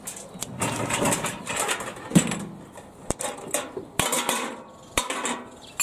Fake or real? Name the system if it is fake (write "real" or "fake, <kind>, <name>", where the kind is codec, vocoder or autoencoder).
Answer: real